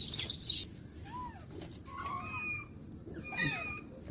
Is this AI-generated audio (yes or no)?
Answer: yes